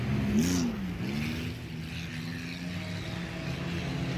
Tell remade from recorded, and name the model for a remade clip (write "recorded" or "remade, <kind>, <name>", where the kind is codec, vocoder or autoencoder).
recorded